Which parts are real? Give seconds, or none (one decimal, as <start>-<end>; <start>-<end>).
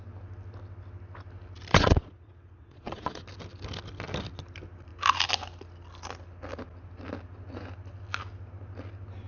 0.0-1.7; 3.2-9.3